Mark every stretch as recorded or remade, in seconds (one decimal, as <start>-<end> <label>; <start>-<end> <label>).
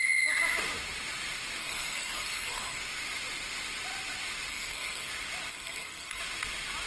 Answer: 0.0-1.6 recorded; 1.6-2.8 remade; 2.8-4.5 recorded; 4.5-5.1 remade; 5.1-5.5 recorded; 5.5-6.2 remade; 6.2-6.9 recorded